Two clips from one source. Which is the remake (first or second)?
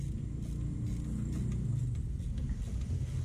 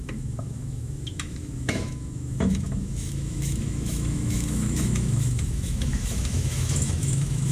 second